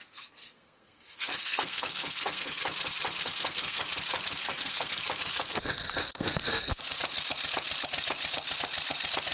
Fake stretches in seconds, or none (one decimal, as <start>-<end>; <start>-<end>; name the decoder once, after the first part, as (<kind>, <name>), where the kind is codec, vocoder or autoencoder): 0.0-2.6 (codec, SNAC); 3.2-3.8; 4.4-5.0; 6.0-6.8